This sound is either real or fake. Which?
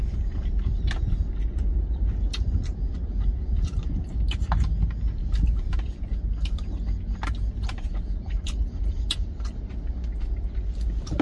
real